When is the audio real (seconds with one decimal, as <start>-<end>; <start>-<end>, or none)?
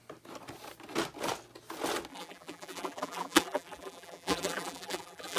0.0-2.1